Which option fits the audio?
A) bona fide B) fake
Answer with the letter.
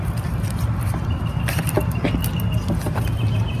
A